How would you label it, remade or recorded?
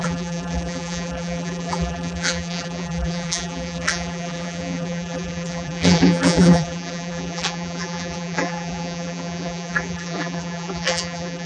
remade